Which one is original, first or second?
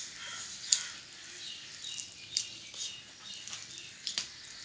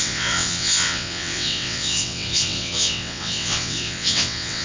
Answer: first